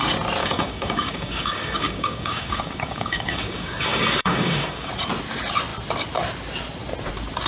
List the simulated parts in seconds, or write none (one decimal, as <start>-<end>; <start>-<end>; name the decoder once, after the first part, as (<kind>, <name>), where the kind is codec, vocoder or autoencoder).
0.4-4.9 (codec, DAC)